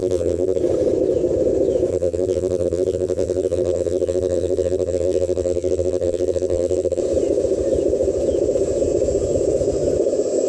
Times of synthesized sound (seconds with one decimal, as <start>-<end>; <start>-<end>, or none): 0.0-0.6; 1.9-7.0